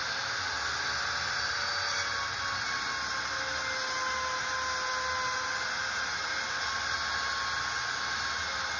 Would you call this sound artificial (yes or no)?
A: no